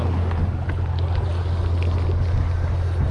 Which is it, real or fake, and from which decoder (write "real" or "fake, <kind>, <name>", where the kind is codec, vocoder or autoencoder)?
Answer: real